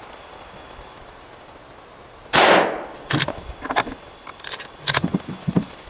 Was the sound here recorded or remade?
recorded